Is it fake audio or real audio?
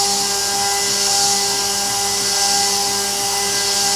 real